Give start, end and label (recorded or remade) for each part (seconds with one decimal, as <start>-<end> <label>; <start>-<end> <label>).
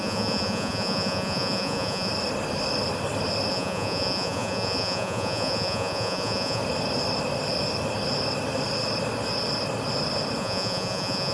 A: 0.0-2.1 remade; 2.1-3.5 recorded; 3.5-6.6 remade; 6.6-10.4 recorded; 10.4-11.3 remade